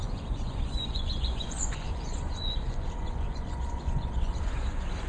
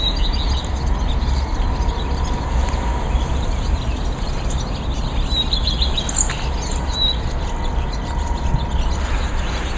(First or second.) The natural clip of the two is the second